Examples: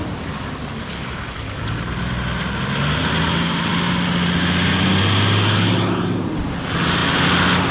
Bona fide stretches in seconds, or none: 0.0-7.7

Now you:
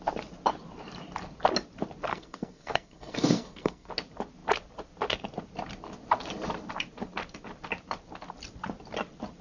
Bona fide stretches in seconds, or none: 0.0-2.1; 3.9-9.4

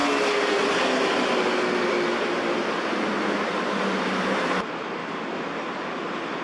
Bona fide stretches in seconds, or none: 0.0-3.8; 5.0-6.4

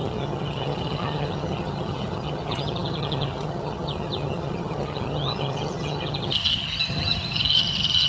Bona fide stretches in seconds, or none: none